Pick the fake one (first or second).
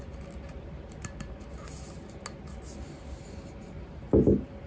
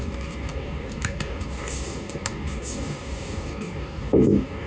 second